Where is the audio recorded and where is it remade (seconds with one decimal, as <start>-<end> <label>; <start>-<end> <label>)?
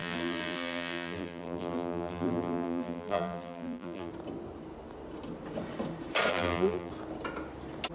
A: 0.0-4.1 remade; 4.1-6.3 recorded; 6.3-6.9 remade; 6.9-7.9 recorded